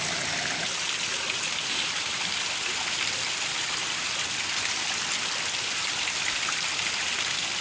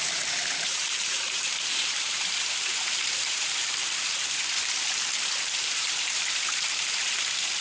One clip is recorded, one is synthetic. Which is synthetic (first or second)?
second